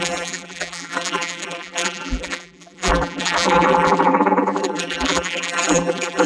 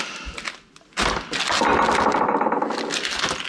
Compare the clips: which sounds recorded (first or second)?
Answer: second